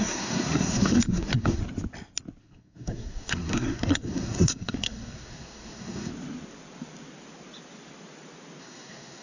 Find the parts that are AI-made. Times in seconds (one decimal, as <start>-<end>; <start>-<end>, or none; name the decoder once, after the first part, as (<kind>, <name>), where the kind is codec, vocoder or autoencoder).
0.0-1.6 (codec, SNAC); 2.4-6.1; 8.6-9.2

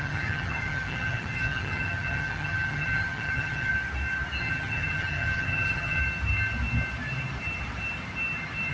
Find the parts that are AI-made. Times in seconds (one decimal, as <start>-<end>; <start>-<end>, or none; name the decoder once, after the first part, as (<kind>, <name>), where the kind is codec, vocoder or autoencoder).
0.0-3.7 (vocoder, HiFi-GAN); 4.4-6.0

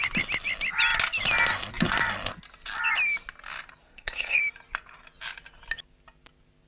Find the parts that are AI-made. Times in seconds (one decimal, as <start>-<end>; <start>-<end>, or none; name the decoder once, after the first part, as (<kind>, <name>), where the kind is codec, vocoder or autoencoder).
3.8-4.4 (codec, SNAC)

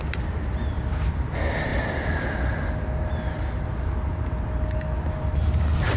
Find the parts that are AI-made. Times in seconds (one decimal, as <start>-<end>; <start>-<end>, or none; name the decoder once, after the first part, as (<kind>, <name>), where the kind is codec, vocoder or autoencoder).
none

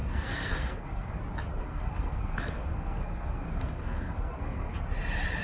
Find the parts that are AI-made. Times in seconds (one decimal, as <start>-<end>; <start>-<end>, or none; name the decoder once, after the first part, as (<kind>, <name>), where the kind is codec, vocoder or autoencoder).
0.0-1.2 (codec, SNAC); 1.6-4.8